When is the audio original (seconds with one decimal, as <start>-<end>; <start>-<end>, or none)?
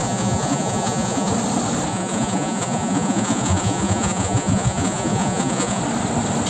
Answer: 1.3-1.9; 5.8-6.5